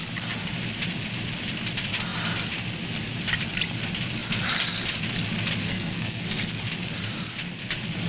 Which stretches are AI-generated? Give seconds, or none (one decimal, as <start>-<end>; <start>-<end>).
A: 5.6-6.5